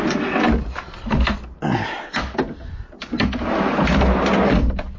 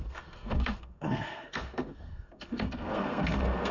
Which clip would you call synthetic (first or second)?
second